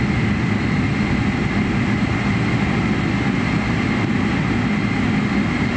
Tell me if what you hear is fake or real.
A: real